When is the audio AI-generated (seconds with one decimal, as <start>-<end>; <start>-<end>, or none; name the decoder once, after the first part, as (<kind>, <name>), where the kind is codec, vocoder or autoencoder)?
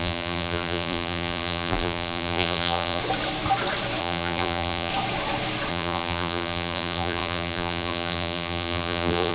0.0-3.0 (vocoder, BigVGAN v2); 4.0-4.9; 5.7-9.3